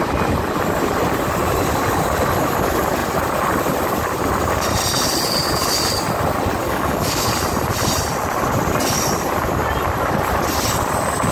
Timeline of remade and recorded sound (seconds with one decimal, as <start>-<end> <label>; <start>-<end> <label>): 0.0-6.6 recorded; 6.6-7.3 remade; 7.3-11.3 recorded